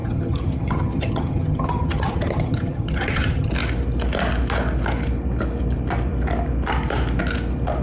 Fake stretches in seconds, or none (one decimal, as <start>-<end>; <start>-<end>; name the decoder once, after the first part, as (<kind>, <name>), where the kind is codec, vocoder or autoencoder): 0.0-3.5 (vocoder, HiFi-GAN)